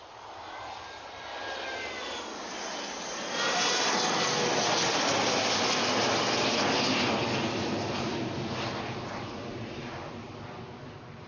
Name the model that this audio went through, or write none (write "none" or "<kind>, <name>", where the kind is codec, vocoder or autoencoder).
none